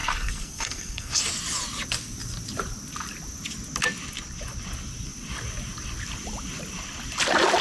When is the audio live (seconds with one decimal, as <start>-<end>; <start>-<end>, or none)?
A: 1.2-7.6